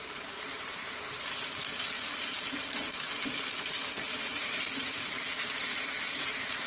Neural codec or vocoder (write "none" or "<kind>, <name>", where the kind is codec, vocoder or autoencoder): vocoder, BigVGAN v2